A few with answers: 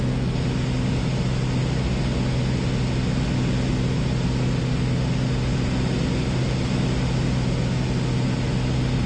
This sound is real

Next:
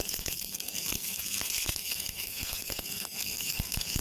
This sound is fake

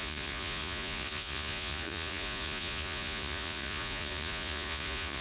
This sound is fake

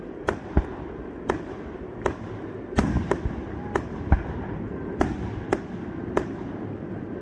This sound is real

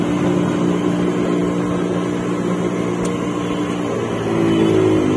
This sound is real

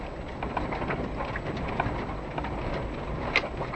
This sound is real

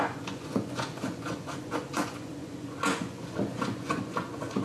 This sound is fake